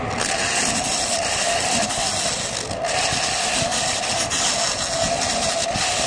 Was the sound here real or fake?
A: real